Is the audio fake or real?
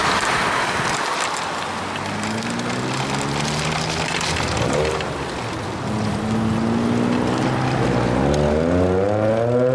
real